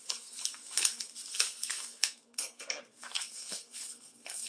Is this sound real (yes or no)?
no